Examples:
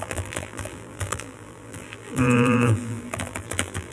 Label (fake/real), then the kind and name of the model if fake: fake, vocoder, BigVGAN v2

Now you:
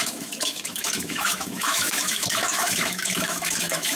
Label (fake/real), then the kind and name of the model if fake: fake, autoencoder, DAC-VAE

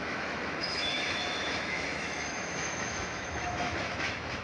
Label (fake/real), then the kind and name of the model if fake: fake, autoencoder, DAC-VAE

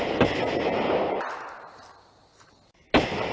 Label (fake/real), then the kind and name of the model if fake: real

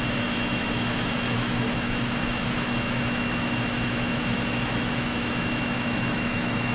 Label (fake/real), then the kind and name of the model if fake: fake, autoencoder, DAC-VAE